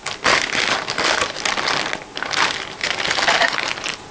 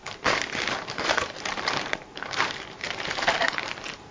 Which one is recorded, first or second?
first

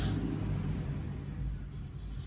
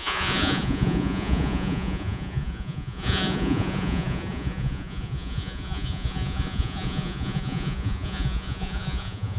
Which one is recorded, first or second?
first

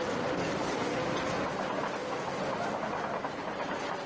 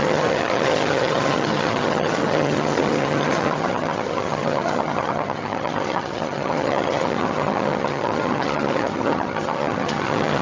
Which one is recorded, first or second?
first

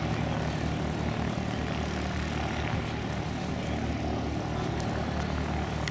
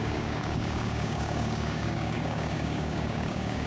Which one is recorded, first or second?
first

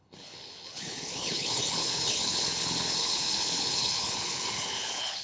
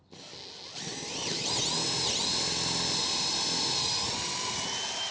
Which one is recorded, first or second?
second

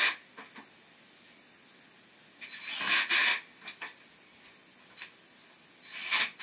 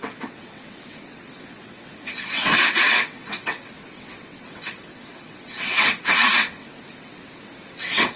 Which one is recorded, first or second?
first